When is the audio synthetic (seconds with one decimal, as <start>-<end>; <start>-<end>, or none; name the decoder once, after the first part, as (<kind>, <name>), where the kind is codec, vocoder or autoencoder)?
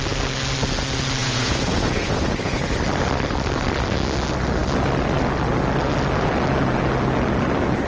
1.2-2.6 (vocoder, Vocos)